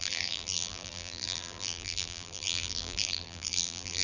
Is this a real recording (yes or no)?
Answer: no